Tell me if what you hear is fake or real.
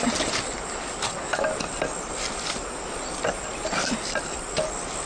real